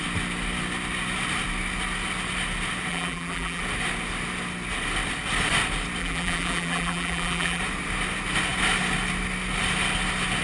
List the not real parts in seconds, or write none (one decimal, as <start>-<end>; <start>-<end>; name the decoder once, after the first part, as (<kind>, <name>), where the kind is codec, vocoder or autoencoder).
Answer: 2.9-3.6 (vocoder, BigVGAN v2); 6.0-7.6